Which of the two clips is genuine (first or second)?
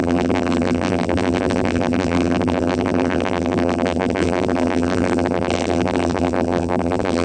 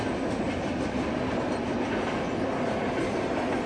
second